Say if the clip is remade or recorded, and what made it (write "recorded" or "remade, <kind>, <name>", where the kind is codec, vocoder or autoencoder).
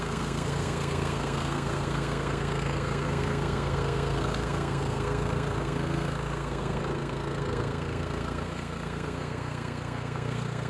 remade, codec, SNAC